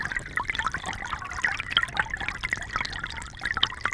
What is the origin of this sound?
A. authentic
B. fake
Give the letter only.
A